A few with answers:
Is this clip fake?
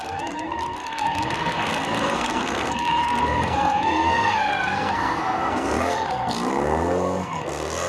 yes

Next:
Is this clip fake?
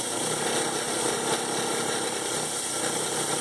no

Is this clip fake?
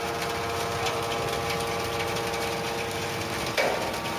no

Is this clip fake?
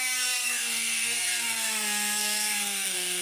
yes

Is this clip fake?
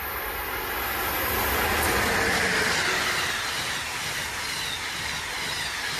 no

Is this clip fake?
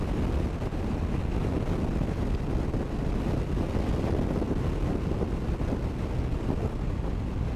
no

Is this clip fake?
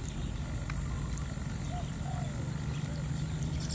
no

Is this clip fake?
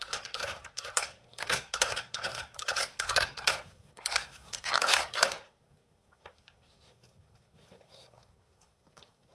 yes